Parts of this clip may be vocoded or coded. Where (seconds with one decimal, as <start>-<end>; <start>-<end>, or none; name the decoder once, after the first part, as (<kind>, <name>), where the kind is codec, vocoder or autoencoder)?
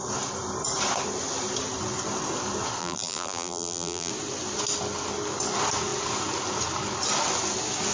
2.8-4.1 (vocoder, BigVGAN v2)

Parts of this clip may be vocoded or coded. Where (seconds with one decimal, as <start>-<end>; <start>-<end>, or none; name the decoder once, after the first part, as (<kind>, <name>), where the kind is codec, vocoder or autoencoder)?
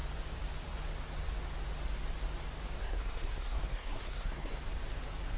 2.8-4.6 (codec, SNAC)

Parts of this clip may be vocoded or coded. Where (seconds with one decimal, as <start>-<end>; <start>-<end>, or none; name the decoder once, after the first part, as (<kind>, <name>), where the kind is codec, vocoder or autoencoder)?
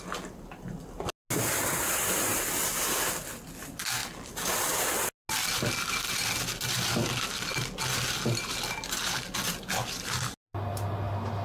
none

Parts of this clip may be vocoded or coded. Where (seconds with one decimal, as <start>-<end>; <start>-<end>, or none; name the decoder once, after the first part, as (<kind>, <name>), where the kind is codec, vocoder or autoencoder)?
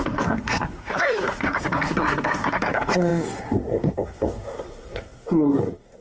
0.0-6.0 (codec, SNAC)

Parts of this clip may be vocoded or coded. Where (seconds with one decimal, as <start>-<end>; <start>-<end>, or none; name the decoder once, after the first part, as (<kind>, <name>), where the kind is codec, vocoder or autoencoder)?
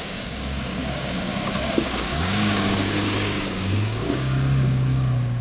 0.0-5.4 (codec, DAC)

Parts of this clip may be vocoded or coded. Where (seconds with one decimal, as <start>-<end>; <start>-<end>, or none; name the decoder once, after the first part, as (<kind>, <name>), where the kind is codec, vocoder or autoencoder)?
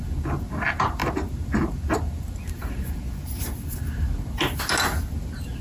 none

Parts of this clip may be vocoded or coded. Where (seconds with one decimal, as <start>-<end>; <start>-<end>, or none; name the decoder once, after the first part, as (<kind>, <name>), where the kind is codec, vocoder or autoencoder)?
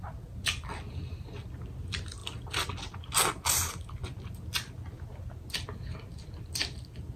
none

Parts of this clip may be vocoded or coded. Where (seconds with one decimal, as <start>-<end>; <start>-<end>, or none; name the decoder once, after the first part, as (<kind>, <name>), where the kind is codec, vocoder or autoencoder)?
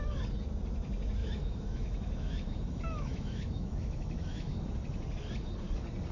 1.2-4.7 (autoencoder, DAC-VAE)